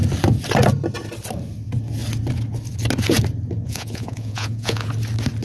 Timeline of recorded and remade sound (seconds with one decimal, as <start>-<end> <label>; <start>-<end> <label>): 0.0-3.6 recorded; 3.6-4.9 remade; 4.9-5.4 recorded